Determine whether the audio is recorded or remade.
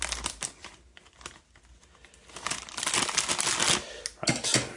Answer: recorded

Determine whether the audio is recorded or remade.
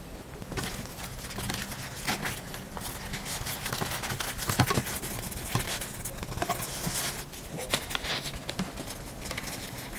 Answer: recorded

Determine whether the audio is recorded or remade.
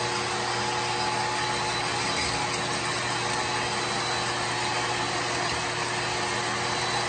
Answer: recorded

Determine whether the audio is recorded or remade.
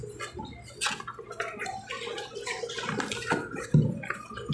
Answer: recorded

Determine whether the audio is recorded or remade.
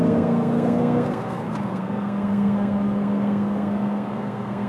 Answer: remade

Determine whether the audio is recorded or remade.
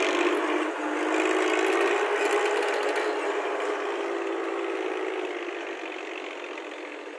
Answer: recorded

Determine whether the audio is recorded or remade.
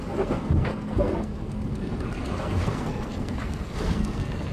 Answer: remade